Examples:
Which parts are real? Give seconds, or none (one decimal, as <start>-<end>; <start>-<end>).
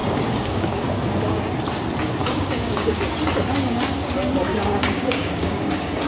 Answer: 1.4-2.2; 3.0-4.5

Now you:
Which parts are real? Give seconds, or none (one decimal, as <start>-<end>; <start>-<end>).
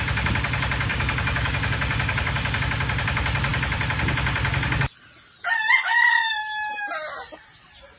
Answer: 0.0-0.9; 2.6-8.0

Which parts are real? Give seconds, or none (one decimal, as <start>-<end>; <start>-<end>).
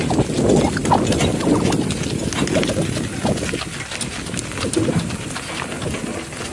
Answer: 0.0-6.5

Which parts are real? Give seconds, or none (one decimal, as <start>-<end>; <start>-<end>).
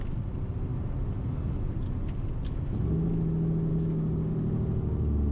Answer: 0.0-3.7; 4.3-5.3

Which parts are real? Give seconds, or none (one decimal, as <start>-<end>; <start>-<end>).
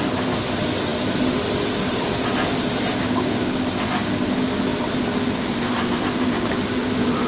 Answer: 0.0-2.9; 3.6-7.3